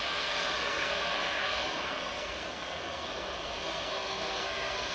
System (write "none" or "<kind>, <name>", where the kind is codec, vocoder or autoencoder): codec, SNAC